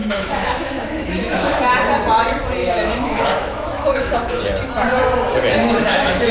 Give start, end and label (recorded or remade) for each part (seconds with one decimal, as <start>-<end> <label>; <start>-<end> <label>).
0.0-1.6 remade; 1.6-2.6 recorded; 2.6-4.4 remade; 4.4-5.6 recorded; 5.6-6.3 remade